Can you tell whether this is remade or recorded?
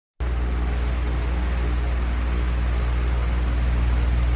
recorded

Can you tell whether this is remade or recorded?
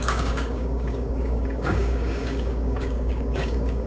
remade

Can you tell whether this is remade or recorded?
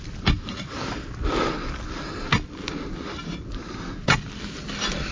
recorded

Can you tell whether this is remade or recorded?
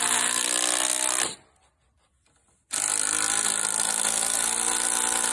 recorded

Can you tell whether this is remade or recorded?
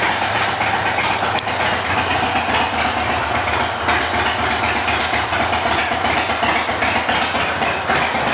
recorded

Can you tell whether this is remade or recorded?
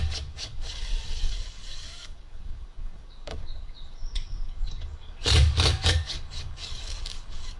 remade